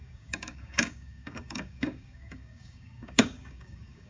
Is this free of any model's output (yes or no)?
no